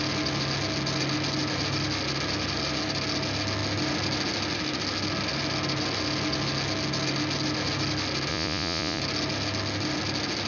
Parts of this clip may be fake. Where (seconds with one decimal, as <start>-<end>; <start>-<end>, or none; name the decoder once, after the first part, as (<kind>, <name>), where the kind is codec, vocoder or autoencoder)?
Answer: 8.3-9.0 (vocoder, Vocos)